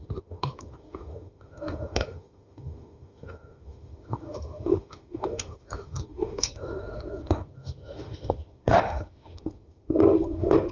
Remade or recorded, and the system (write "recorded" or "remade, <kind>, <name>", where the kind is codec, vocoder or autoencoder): remade, autoencoder, DAC-VAE